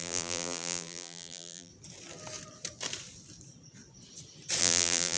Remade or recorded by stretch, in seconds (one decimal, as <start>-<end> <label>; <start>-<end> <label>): 0.0-1.7 remade; 1.7-4.6 recorded; 4.6-5.2 remade